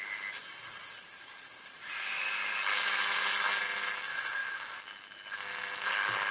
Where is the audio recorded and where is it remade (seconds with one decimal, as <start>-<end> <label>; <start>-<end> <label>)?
0.0-6.3 recorded